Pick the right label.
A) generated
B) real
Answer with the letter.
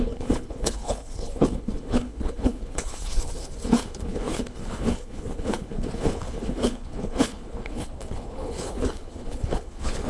A